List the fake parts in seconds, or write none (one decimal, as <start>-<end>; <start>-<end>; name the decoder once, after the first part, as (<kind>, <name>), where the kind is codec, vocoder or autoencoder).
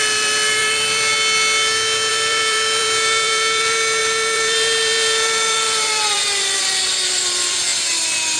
0.0-1.1 (vocoder, BigVGAN v2); 2.1-7.7